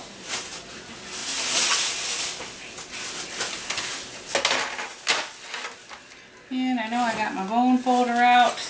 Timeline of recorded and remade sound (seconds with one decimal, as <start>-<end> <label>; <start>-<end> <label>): 0.0-8.7 recorded